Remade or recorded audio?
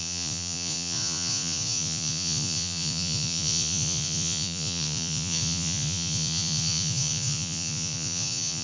remade